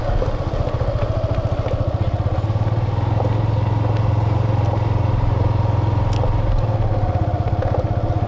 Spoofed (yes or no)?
no